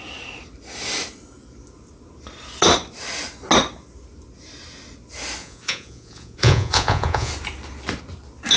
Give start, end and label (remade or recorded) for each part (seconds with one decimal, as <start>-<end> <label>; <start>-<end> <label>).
0.0-5.4 recorded; 5.4-7.3 remade; 7.3-8.6 recorded

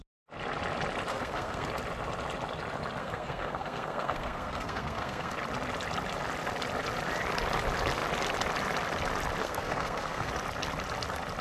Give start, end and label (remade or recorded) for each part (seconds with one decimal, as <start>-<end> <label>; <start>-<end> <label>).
0.0-1.1 recorded; 1.1-1.7 remade; 1.7-3.0 recorded; 3.0-5.3 remade; 5.3-9.4 recorded; 9.4-10.3 remade; 10.3-11.4 recorded

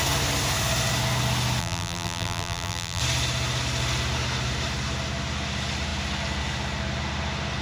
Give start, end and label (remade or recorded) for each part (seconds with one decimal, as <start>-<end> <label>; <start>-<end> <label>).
0.0-1.6 recorded; 1.6-3.0 remade; 3.0-7.6 recorded

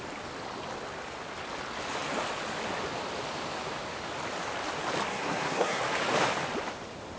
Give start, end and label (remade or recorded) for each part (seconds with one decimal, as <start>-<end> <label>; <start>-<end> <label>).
0.0-5.1 recorded; 5.1-5.8 remade; 5.8-7.2 recorded